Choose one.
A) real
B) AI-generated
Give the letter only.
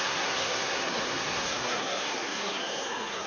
B